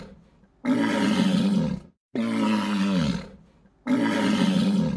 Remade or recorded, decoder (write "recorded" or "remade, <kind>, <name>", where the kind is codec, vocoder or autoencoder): recorded